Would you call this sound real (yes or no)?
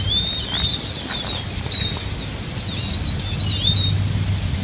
yes